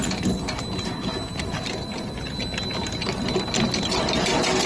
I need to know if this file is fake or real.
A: real